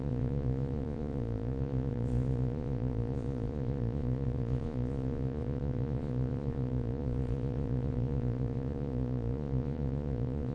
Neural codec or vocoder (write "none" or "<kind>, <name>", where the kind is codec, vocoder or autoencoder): vocoder, Vocos